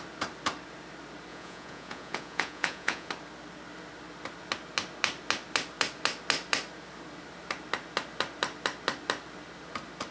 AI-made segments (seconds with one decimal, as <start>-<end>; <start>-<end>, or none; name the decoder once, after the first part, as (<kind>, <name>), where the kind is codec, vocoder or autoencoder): 1.3-3.1 (vocoder, Vocos)